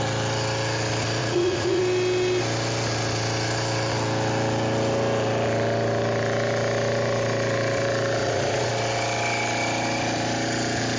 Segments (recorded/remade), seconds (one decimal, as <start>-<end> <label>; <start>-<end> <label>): 0.0-1.2 recorded; 1.2-1.8 remade; 1.8-8.2 recorded; 8.2-8.7 remade; 8.7-11.0 recorded

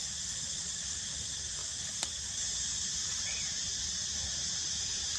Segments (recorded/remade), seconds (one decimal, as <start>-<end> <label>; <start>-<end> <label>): 0.0-1.0 recorded; 1.0-1.6 remade; 1.6-2.8 recorded; 2.8-5.2 remade

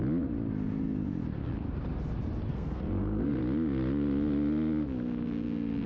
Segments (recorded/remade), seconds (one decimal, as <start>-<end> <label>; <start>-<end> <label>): 0.0-2.5 recorded; 2.5-3.4 remade; 3.4-5.9 recorded

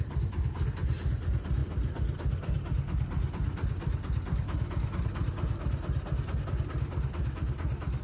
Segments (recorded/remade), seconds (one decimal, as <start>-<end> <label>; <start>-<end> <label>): 0.0-8.0 recorded

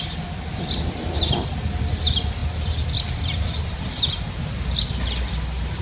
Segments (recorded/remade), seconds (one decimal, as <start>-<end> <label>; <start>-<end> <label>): 0.0-5.8 recorded

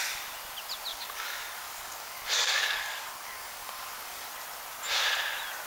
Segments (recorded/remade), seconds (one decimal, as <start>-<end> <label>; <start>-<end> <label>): 0.0-0.9 recorded; 0.9-4.3 remade; 4.3-5.7 recorded

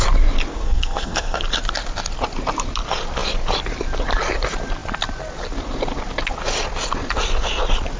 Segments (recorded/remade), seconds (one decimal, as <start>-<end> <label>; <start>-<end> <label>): 0.0-0.5 recorded; 0.5-1.4 remade; 1.4-8.0 recorded

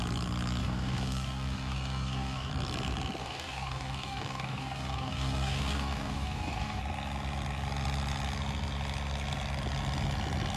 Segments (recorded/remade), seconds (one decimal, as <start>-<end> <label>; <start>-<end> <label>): 0.0-0.6 recorded; 0.6-2.5 remade; 2.5-3.2 recorded; 3.2-6.8 remade; 6.8-10.6 recorded